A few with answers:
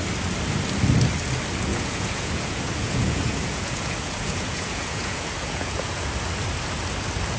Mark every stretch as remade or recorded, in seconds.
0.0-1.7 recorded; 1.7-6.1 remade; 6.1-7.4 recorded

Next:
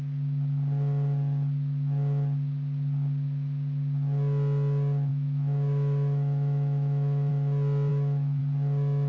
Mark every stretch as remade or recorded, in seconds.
0.0-5.1 recorded; 5.1-7.3 remade; 7.3-7.9 recorded; 7.9-8.4 remade; 8.4-9.1 recorded

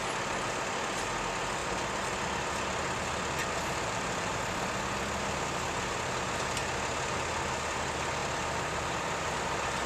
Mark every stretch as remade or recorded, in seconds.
0.0-3.4 recorded; 3.4-4.3 remade; 4.3-9.9 recorded

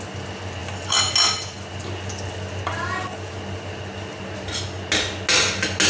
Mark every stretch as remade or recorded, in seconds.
0.0-5.9 recorded

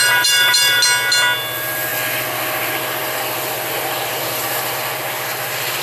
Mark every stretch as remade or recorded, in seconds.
0.0-0.8 remade; 0.8-5.8 recorded

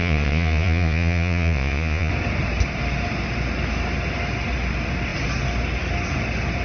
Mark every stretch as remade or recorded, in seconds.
0.0-2.1 remade; 2.1-6.6 recorded

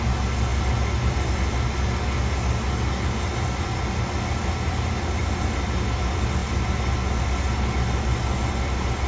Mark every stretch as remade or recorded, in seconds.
0.0-9.1 recorded

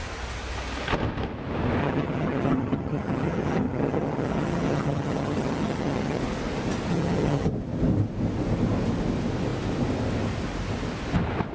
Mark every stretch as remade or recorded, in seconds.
0.0-1.8 recorded; 1.8-6.2 remade; 6.2-6.9 recorded; 6.9-7.5 remade; 7.5-11.5 recorded